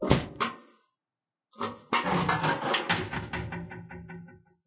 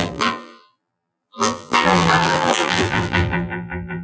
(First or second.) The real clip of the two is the first